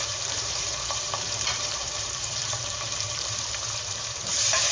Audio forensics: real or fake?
fake